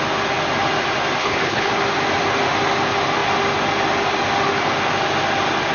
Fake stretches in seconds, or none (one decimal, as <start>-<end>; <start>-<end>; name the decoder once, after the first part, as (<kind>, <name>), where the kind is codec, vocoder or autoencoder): 1.2-1.7 (codec, HILCodec)